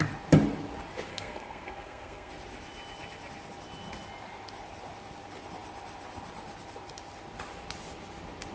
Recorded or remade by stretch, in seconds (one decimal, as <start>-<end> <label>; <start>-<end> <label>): 0.0-1.1 recorded; 1.1-2.3 remade; 2.3-8.5 recorded